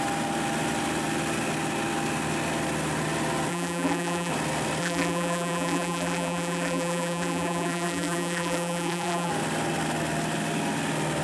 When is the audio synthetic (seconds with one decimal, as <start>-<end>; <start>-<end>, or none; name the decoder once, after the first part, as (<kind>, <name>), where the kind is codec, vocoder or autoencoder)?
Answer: 3.5-4.3 (vocoder, BigVGAN v2); 4.8-9.3